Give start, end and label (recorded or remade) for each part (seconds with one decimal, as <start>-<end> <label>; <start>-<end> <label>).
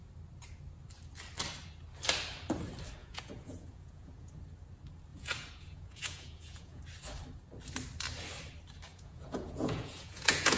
0.0-3.0 recorded; 3.0-4.3 remade; 4.3-5.1 recorded; 5.1-6.8 remade; 6.8-8.9 recorded; 8.9-10.6 remade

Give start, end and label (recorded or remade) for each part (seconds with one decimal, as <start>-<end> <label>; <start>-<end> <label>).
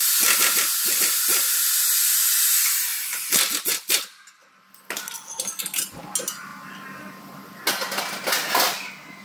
0.0-1.3 recorded; 1.3-2.4 remade; 2.4-9.2 recorded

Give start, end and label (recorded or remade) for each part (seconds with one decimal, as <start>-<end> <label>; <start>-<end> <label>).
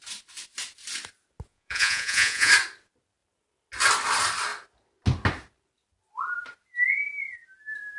0.0-1.5 recorded; 1.5-2.5 remade; 2.5-8.0 recorded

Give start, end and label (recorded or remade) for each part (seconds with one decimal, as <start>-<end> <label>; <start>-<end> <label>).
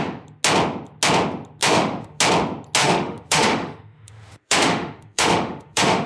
0.0-1.6 recorded; 1.6-2.2 remade; 2.2-2.8 recorded; 2.8-6.1 remade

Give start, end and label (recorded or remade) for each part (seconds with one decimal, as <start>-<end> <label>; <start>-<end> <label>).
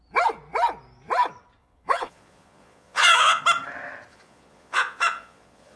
0.0-1.6 recorded; 1.6-3.4 remade; 3.4-4.1 recorded; 4.1-5.8 remade